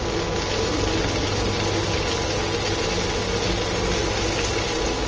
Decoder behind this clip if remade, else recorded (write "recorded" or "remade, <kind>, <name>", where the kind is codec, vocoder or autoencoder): recorded